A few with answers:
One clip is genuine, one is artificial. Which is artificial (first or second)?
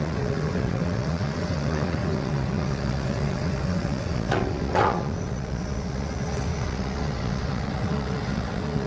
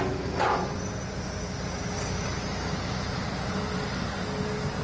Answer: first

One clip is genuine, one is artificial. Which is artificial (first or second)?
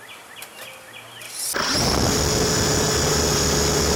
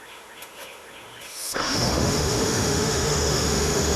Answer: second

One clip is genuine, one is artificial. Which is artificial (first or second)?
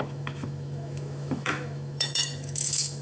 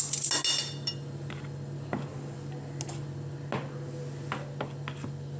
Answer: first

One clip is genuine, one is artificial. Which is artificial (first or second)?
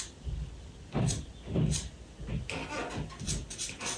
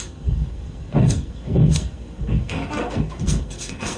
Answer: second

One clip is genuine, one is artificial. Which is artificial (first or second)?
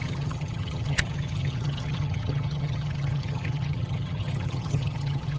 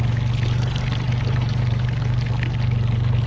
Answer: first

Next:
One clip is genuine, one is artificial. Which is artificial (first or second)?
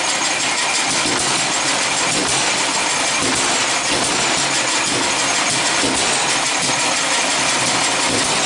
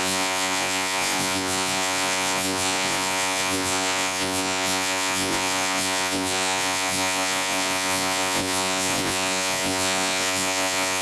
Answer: second